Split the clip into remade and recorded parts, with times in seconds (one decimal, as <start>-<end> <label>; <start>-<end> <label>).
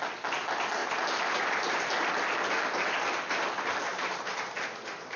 0.0-0.8 recorded; 0.8-2.1 remade; 2.1-3.9 recorded; 3.9-4.6 remade; 4.6-5.2 recorded